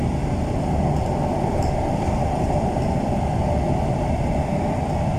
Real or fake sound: real